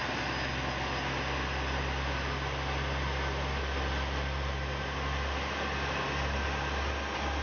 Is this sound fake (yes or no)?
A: no